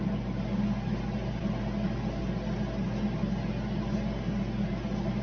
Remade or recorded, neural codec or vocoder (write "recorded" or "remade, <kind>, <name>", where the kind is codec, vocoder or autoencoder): recorded